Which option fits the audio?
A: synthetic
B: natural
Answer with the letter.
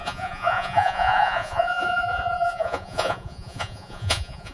A